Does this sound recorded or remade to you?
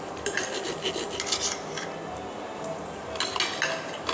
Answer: recorded